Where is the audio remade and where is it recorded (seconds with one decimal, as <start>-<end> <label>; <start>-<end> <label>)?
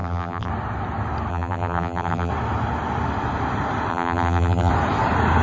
0.0-0.5 remade; 0.5-1.3 recorded; 1.3-2.3 remade; 2.3-3.9 recorded; 3.9-4.7 remade; 4.7-5.4 recorded